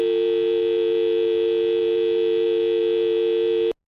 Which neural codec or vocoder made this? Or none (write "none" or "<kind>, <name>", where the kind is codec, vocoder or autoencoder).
none